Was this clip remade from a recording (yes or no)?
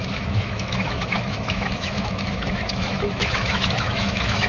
yes